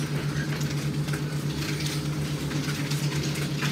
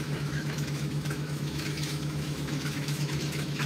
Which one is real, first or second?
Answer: first